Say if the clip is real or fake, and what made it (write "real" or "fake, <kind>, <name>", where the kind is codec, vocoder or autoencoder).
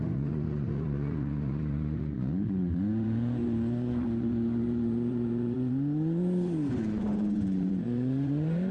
fake, vocoder, Vocos